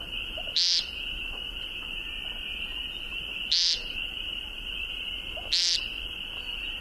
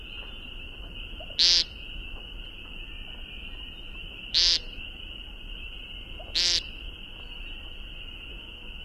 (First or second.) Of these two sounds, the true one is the second